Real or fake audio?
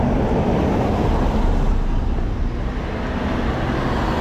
real